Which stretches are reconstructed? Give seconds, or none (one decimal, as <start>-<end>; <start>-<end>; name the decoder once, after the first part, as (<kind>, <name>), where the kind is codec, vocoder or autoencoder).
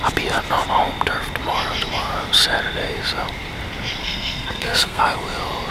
4.0-5.0 (codec, SNAC)